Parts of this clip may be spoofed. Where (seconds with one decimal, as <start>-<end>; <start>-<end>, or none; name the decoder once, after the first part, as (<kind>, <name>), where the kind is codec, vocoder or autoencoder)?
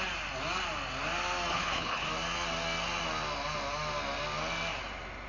1.5-2.1 (codec, HILCodec)